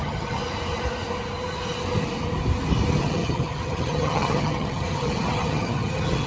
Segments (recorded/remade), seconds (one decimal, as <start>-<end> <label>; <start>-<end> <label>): 0.0-0.4 remade; 0.4-3.0 recorded; 3.0-6.3 remade